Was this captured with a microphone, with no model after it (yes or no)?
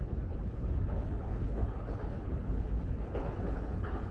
no